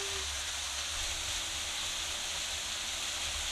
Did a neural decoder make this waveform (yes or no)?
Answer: no